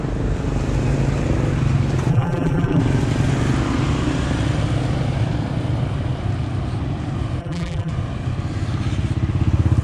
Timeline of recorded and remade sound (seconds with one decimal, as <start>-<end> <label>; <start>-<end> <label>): 0.0-2.1 recorded; 2.1-2.8 remade; 2.8-7.4 recorded; 7.4-7.9 remade; 7.9-9.8 recorded